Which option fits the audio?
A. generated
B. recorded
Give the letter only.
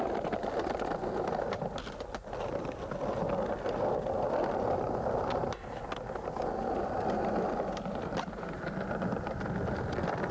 B